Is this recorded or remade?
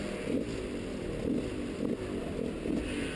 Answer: recorded